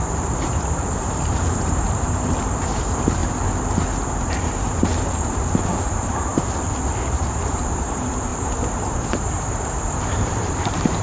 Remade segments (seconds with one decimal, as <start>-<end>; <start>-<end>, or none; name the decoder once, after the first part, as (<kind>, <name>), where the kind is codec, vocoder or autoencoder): 0.0-3.2 (vocoder, BigVGAN v2); 4.1-6.3; 7.2-11.0